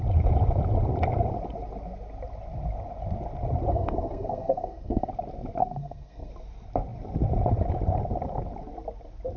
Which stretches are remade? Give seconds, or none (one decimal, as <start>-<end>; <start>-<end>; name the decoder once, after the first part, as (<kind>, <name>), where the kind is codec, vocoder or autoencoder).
3.7-5.1 (codec, SNAC); 5.6-6.3